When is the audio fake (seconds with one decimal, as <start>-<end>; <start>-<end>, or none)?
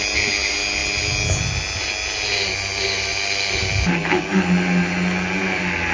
none